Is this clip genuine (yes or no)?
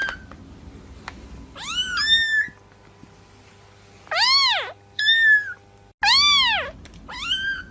yes